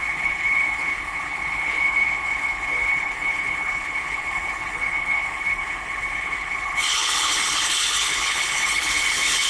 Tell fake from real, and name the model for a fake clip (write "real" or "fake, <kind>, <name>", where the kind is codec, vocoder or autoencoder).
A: fake, codec, HILCodec